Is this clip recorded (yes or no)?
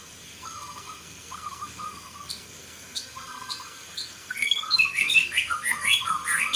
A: no